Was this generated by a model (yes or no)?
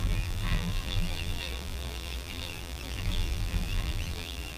yes